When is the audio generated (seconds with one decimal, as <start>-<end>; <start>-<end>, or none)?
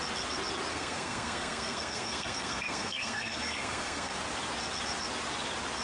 0.7-4.2